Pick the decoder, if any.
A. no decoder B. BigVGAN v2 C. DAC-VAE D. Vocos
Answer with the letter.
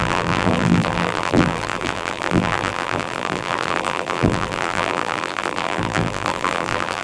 B